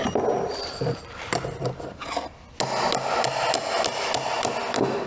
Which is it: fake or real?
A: real